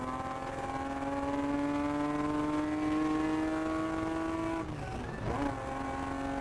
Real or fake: real